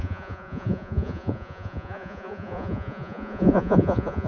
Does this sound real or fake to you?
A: fake